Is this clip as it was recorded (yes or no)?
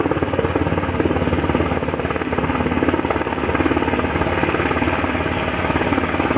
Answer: yes